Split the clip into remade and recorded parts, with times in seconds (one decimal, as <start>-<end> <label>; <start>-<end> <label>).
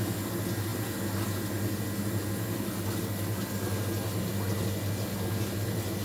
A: 0.0-6.0 recorded